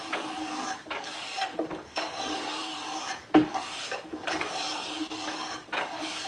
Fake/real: fake